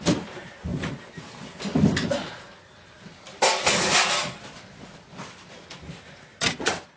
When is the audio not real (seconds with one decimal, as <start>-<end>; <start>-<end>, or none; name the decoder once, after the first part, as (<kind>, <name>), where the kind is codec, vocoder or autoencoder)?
6.3-7.0 (vocoder, BigVGAN v2)